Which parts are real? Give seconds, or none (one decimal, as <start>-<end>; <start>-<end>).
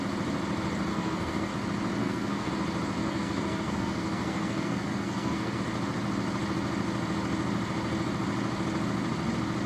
0.0-0.9; 1.5-2.0; 2.5-3.0; 5.6-9.7